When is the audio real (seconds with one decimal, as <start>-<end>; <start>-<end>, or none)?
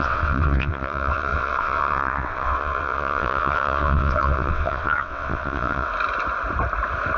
5.9-7.2